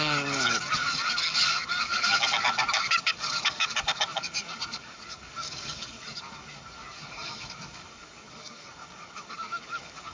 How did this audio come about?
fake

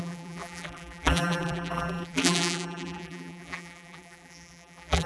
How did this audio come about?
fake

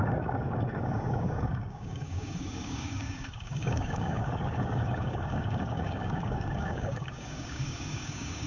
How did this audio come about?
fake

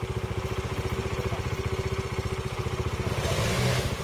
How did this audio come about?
real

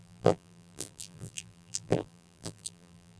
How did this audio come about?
fake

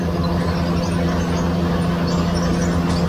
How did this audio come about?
real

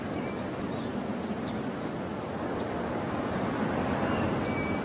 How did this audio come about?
real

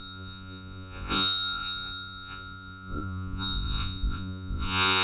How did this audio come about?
fake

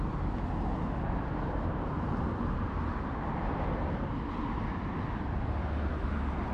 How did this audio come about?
real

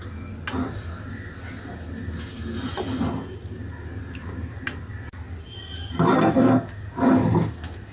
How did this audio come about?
real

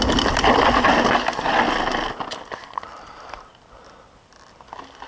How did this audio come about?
real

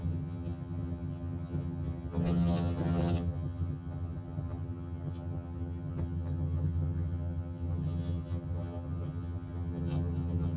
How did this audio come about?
fake